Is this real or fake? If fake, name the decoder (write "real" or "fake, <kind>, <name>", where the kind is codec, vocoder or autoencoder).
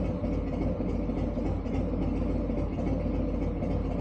real